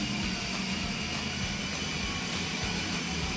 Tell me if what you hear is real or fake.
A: real